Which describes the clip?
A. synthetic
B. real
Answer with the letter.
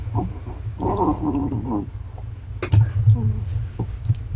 B